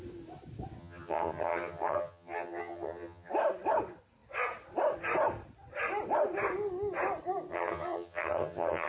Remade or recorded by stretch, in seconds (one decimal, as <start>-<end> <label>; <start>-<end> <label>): 0.0-0.8 recorded; 0.8-3.3 remade; 3.3-7.5 recorded; 7.5-8.9 remade